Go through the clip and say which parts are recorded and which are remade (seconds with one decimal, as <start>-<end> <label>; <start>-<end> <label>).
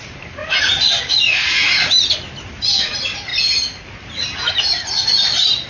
0.0-0.4 recorded; 0.4-1.1 remade; 1.1-5.7 recorded